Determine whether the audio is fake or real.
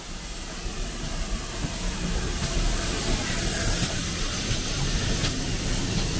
real